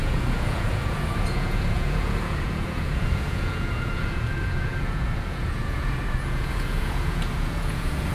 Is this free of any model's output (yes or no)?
no